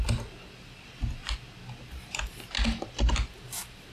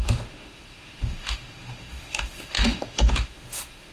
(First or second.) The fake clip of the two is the second